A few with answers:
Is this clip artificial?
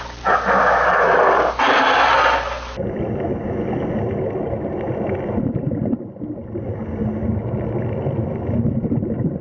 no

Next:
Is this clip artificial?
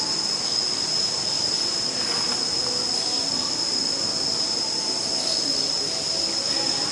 no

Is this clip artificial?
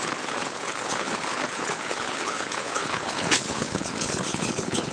yes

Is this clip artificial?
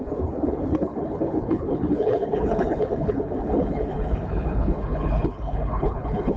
yes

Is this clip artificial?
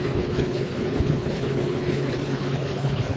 yes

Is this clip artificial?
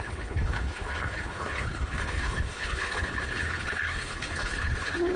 yes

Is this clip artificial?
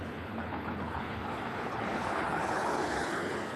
yes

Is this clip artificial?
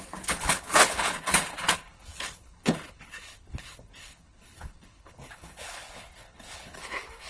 yes